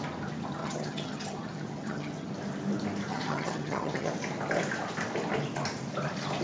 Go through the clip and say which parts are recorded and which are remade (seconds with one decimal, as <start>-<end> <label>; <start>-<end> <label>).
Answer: 0.0-0.6 recorded; 0.6-2.3 remade; 2.3-3.1 recorded; 3.1-4.1 remade; 4.1-6.4 recorded